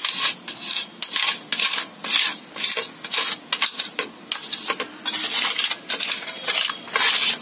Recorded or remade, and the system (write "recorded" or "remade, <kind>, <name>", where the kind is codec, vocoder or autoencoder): recorded